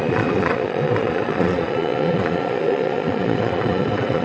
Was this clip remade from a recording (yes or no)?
yes